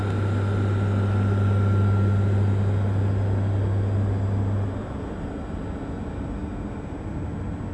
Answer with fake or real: real